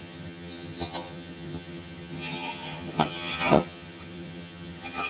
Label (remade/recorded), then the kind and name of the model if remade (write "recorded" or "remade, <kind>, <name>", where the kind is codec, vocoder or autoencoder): remade, vocoder, HiFi-GAN